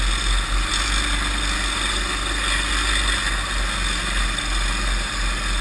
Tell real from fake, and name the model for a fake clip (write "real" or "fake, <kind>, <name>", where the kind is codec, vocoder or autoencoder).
real